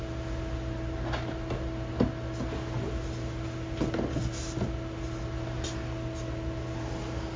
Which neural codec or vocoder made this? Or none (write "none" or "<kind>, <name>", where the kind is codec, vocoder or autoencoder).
none